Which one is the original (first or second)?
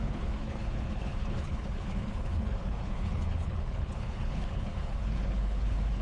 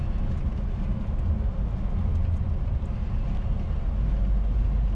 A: second